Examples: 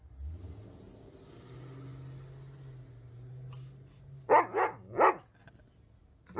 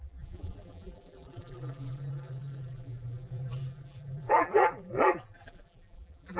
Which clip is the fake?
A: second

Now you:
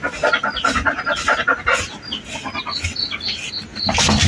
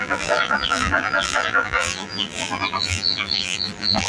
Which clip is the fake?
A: second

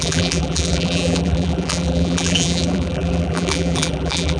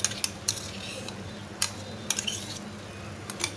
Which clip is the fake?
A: first